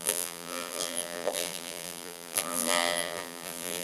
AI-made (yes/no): yes